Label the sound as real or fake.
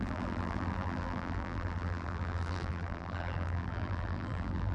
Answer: fake